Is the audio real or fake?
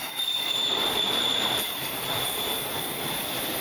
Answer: fake